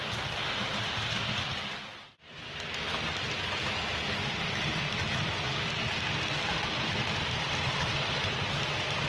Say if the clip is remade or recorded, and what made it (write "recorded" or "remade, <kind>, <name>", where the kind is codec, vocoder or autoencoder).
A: recorded